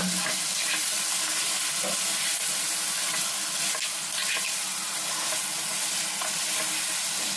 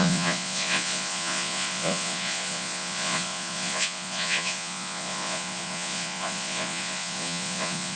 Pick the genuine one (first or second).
first